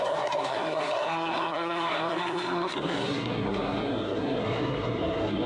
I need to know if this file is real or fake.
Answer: fake